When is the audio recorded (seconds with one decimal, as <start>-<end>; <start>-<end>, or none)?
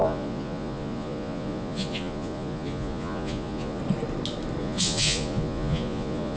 3.8-4.6